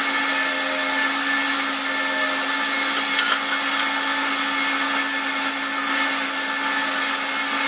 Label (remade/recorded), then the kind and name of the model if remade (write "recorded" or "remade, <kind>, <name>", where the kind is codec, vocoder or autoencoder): recorded